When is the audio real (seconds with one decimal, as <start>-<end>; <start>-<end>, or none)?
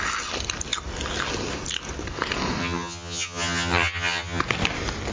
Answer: 0.0-2.6; 4.4-5.1